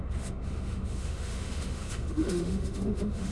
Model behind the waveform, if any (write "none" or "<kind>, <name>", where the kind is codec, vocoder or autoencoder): autoencoder, DAC-VAE